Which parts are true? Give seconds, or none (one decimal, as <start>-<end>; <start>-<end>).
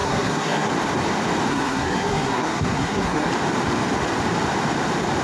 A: 0.7-1.5; 3.3-5.2